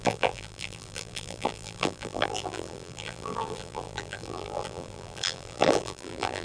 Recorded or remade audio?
remade